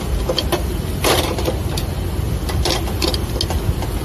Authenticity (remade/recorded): recorded